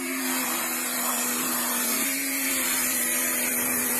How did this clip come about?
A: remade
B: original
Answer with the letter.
A